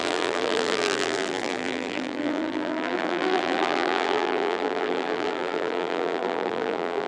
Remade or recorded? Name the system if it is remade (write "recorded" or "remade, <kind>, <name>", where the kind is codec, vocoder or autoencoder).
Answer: remade, vocoder, BigVGAN v2